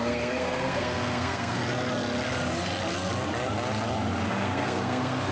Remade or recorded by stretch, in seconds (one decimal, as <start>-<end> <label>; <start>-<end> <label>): 0.0-1.6 remade; 1.6-4.3 recorded; 4.3-5.3 remade